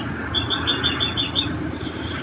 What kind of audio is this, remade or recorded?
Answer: recorded